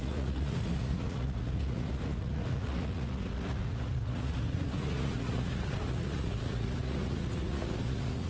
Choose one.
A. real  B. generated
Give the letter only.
B